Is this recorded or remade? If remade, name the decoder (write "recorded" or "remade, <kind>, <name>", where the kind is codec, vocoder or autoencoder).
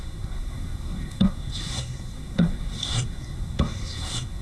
remade, codec, SNAC